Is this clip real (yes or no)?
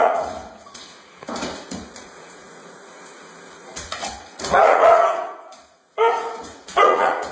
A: no